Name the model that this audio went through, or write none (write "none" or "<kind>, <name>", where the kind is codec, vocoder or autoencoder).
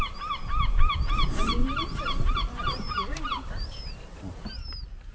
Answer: vocoder, BigVGAN v2